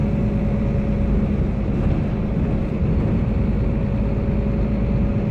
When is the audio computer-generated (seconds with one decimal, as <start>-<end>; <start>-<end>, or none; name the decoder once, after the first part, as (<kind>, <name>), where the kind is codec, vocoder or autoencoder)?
none